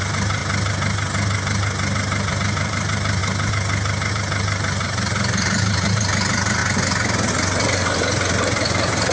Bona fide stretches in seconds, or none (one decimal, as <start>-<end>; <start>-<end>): 0.4-2.3; 3.2-4.1; 6.6-7.3